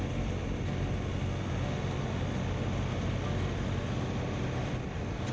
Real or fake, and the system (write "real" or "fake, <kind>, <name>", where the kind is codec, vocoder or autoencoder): real